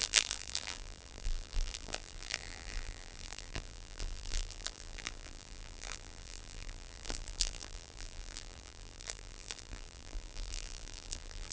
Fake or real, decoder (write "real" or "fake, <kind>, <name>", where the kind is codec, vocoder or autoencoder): fake, vocoder, BigVGAN v2